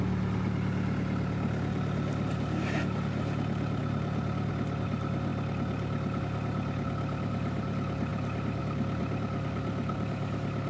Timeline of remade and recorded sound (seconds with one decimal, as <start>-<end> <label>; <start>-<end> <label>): 0.0-10.7 recorded